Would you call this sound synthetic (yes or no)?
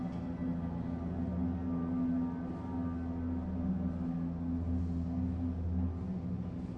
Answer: no